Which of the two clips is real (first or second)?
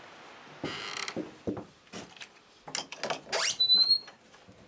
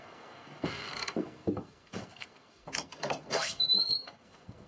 first